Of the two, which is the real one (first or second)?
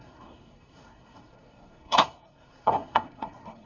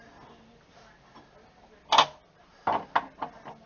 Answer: second